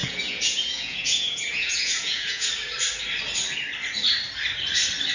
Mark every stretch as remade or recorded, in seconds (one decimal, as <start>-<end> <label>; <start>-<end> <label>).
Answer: 0.0-2.5 remade; 2.5-5.1 recorded